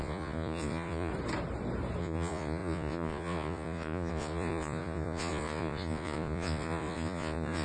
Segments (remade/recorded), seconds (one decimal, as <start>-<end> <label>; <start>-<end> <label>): 0.0-1.1 remade; 1.1-2.0 recorded; 2.0-7.6 remade